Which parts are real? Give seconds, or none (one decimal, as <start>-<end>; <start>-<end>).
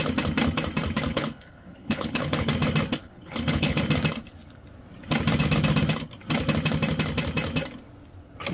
0.0-1.1; 2.5-3.0; 3.8-8.5